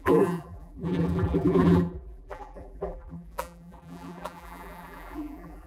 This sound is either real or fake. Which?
fake